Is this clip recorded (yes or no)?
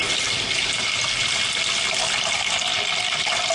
yes